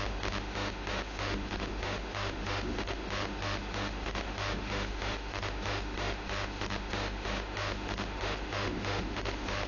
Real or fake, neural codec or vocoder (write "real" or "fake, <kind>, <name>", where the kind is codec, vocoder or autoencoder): fake, autoencoder, DAC-VAE